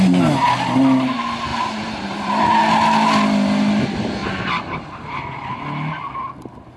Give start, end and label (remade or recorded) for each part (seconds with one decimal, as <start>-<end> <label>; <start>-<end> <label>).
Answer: 0.0-1.5 recorded; 1.5-2.6 remade; 2.6-4.2 recorded; 4.2-5.2 remade; 5.2-6.8 recorded